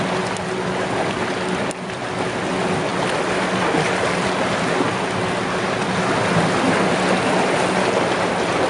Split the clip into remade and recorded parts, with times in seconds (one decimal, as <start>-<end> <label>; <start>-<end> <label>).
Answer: 0.0-8.7 recorded